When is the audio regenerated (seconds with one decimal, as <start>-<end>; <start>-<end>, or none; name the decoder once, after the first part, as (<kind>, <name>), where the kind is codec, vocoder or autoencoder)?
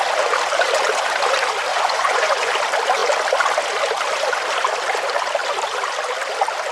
1.7-2.5 (vocoder, Vocos)